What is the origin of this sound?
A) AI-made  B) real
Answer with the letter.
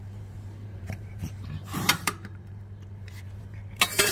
A